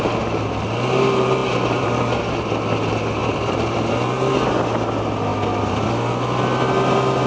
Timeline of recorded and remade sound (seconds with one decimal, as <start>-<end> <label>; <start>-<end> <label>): 0.0-1.4 recorded; 1.4-2.2 remade; 2.2-3.2 recorded; 3.2-3.9 remade; 3.9-5.3 recorded; 5.3-5.9 remade; 5.9-7.3 recorded